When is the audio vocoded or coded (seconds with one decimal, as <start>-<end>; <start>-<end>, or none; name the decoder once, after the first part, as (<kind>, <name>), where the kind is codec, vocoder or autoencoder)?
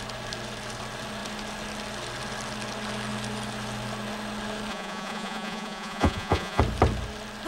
4.7-6.6 (vocoder, Vocos)